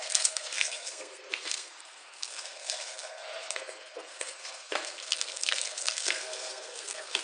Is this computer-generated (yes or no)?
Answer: yes